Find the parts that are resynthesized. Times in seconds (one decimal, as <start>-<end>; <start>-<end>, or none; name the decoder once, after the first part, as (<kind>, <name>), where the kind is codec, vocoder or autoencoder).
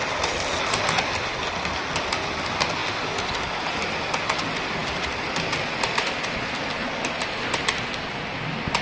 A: 4.8-5.9 (vocoder, BigVGAN v2)